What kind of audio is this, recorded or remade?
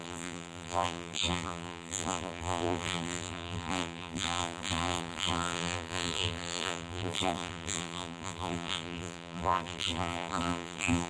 remade